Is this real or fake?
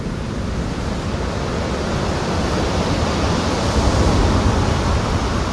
real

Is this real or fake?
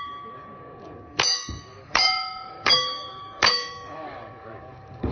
fake